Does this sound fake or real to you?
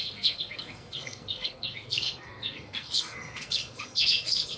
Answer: fake